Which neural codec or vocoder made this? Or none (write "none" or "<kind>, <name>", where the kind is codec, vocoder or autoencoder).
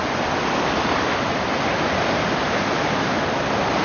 none